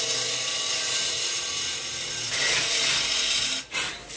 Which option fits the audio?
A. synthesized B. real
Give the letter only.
B